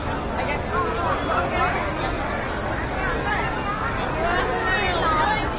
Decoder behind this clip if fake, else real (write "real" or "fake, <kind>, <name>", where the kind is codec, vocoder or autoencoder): real